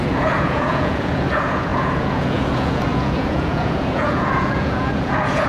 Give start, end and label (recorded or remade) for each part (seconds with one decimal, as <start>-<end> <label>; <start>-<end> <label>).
0.0-5.5 remade